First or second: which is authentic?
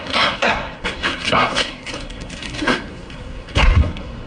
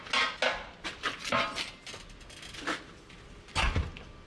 second